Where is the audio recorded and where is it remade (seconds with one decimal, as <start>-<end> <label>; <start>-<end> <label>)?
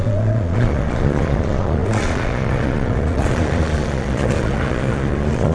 0.0-5.5 remade